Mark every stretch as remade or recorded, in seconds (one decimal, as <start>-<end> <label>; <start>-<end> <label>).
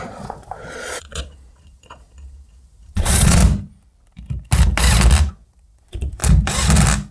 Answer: 0.0-3.4 remade; 3.4-5.3 recorded; 5.3-6.2 remade; 6.2-7.1 recorded